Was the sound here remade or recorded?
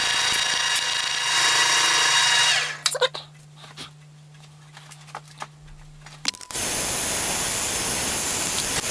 recorded